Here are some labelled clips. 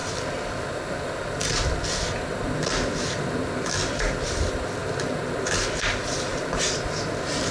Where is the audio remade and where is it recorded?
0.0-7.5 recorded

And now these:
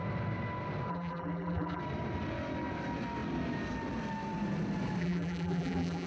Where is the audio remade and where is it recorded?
0.0-0.9 recorded; 0.9-1.8 remade; 1.8-5.0 recorded; 5.0-6.1 remade

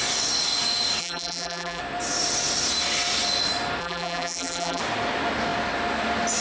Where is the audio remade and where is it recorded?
0.0-1.0 recorded; 1.0-1.8 remade; 1.8-3.8 recorded; 3.8-4.8 remade; 4.8-6.4 recorded

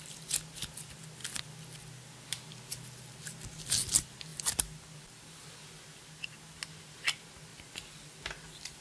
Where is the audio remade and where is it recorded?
0.0-4.3 recorded; 4.3-5.5 remade; 5.5-7.5 recorded; 7.5-8.2 remade; 8.2-8.8 recorded

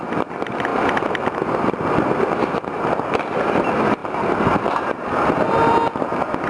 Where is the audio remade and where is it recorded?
0.0-6.5 recorded

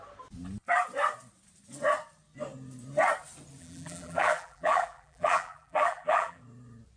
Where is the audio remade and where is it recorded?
0.0-3.6 recorded; 3.6-6.4 remade; 6.4-7.0 recorded